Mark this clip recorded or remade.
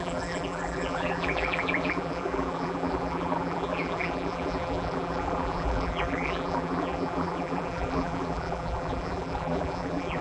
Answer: remade